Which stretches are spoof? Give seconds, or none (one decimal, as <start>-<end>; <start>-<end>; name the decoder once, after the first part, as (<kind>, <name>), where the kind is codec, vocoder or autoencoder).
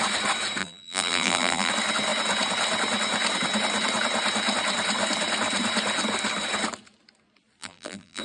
0.6-1.7 (vocoder, BigVGAN v2); 7.6-8.2